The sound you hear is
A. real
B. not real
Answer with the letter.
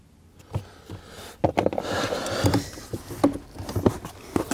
A